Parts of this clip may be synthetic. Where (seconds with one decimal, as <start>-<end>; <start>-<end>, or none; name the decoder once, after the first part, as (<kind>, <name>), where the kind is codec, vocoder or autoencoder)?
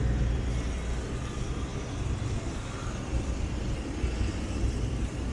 1.7-5.3 (vocoder, BigVGAN v2)